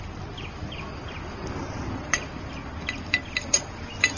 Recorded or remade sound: recorded